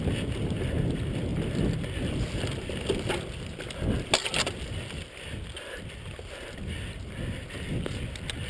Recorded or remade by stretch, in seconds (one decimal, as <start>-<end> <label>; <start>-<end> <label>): 0.0-8.5 recorded